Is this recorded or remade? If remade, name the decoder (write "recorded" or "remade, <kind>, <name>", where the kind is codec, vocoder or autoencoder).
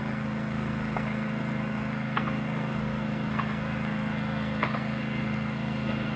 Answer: remade, codec, SNAC